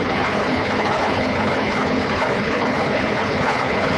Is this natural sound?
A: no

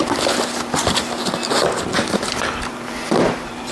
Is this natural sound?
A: yes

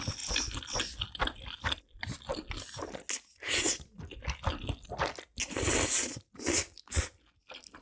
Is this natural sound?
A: yes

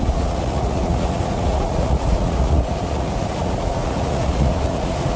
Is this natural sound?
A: no